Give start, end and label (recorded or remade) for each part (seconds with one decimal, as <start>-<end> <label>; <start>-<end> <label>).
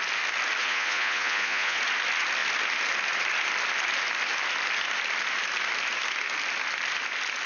0.0-0.6 recorded; 0.6-1.8 remade; 1.8-7.5 recorded